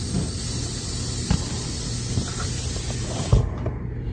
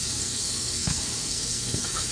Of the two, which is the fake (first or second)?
second